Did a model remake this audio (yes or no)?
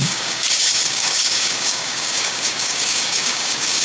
yes